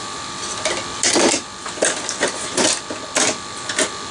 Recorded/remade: recorded